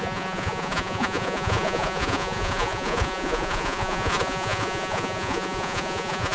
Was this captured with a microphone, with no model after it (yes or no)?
no